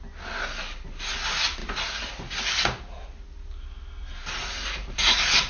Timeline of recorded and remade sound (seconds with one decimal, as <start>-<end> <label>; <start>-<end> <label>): 0.0-5.5 recorded